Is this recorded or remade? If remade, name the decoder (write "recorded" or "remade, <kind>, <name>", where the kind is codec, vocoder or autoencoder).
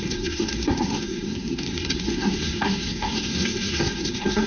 remade, codec, SNAC